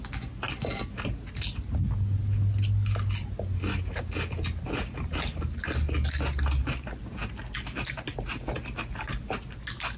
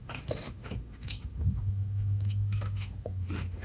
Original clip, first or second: first